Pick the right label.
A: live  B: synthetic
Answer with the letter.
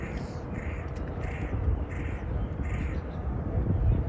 B